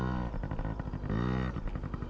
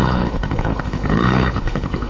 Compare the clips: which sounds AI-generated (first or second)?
second